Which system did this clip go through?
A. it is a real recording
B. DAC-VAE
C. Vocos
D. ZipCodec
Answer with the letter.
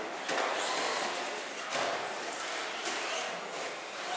A